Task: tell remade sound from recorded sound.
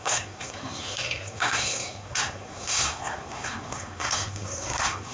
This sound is remade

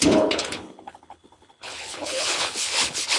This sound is remade